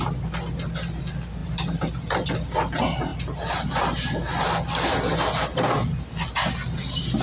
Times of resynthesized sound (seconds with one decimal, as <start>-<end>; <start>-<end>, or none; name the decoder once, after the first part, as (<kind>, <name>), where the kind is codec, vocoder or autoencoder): none